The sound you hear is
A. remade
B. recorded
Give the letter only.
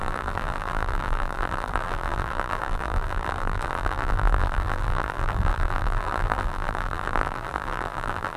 A